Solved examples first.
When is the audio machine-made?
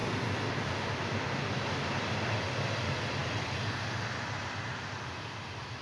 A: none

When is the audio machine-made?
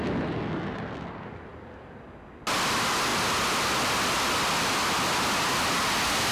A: none